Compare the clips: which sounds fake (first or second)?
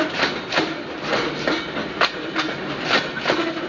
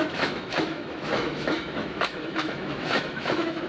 second